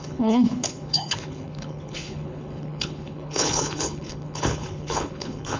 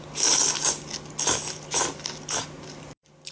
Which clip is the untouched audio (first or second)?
second